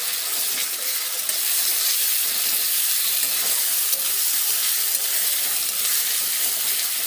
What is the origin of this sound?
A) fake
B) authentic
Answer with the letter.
B